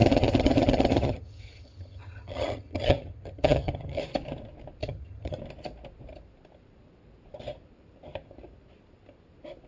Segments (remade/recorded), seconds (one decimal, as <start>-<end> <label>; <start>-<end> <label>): 0.0-4.0 remade; 4.0-4.8 recorded; 4.8-5.4 remade; 5.4-9.7 recorded

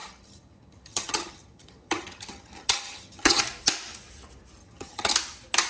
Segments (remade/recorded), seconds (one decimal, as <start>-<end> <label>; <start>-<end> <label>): 0.0-3.4 remade; 3.4-4.6 recorded; 4.6-5.1 remade; 5.1-5.7 recorded

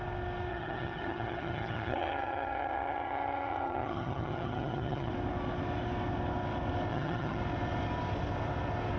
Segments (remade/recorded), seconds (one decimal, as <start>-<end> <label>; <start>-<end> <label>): 0.0-0.5 recorded; 0.5-5.1 remade; 5.1-6.9 recorded; 6.9-7.4 remade; 7.4-9.0 recorded